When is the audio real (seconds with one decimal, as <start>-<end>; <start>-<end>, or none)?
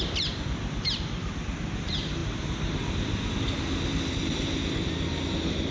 0.0-5.7